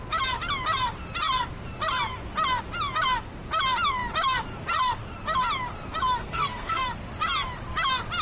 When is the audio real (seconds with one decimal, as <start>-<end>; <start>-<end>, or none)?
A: 0.0-6.2; 6.8-8.2